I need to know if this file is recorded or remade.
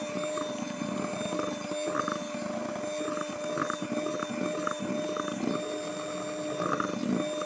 recorded